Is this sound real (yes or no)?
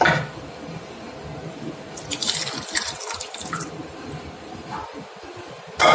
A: yes